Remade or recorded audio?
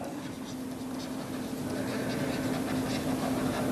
recorded